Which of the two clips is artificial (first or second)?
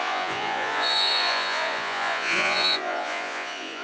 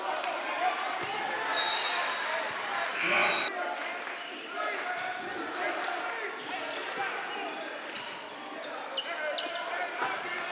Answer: first